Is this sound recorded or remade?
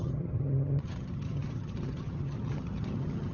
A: remade